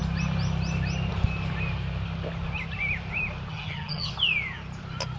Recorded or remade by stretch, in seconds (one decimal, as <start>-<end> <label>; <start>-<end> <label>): 0.0-3.5 recorded; 3.5-4.1 remade; 4.1-5.2 recorded